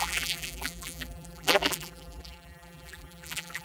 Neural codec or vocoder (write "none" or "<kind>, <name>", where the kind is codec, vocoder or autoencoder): vocoder, BigVGAN v2